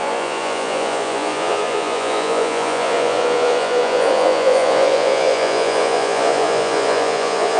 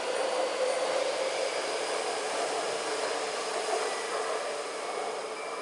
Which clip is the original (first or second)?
second